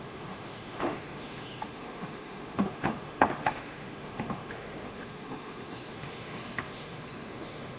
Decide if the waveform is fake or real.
fake